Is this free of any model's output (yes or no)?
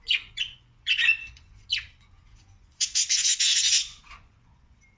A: no